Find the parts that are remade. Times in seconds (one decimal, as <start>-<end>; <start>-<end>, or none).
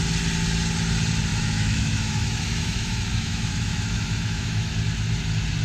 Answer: 1.3-4.7